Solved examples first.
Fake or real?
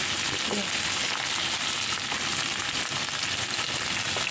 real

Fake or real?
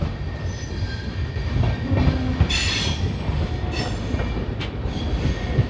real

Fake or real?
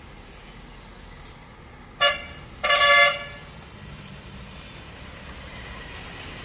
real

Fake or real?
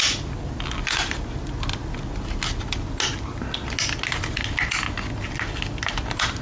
real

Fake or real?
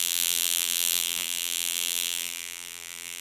fake